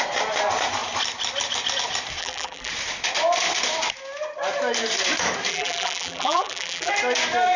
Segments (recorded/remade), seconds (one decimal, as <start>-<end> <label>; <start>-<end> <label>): 0.0-2.2 recorded; 2.2-2.7 remade; 2.7-5.5 recorded; 5.5-6.9 remade; 6.9-7.6 recorded